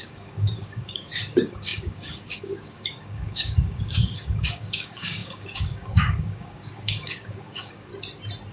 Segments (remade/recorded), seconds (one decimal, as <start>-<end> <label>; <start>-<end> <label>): 0.0-7.9 remade; 7.9-8.5 recorded